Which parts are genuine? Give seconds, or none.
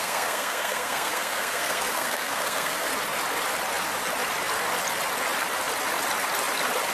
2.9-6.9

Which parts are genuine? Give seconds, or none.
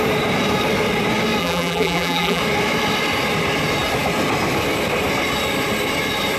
0.0-1.4; 2.4-6.4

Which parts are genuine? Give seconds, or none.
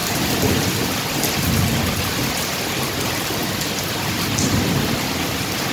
3.4-4.1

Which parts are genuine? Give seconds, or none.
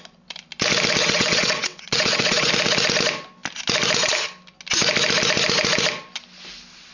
0.0-1.0; 2.5-6.9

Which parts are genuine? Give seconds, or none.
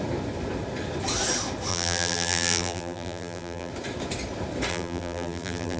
0.0-1.7; 3.7-4.7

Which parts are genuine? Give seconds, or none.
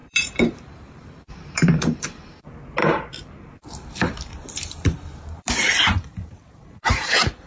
2.4-2.8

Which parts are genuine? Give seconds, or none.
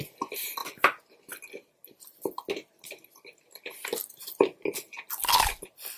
0.0-6.0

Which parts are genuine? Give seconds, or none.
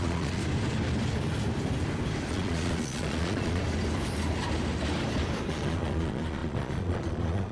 0.4-2.3; 3.6-5.5